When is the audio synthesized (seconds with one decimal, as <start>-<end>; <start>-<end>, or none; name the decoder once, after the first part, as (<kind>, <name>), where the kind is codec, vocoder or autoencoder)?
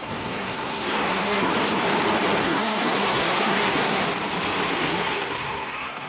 0.0-1.5 (codec, SNAC); 2.4-4.0; 4.7-6.1